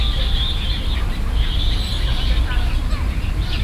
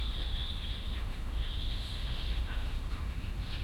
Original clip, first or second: first